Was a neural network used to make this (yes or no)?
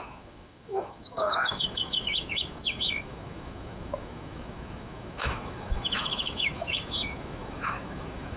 yes